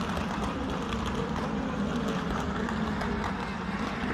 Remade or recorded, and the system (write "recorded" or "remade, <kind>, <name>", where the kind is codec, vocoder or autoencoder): recorded